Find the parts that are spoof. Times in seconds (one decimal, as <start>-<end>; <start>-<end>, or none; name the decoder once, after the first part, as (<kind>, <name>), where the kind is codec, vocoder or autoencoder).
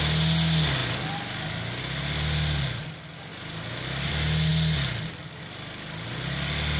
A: none